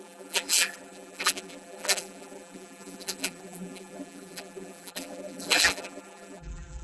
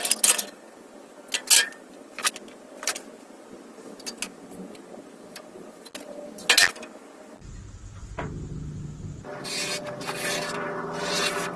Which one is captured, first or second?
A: second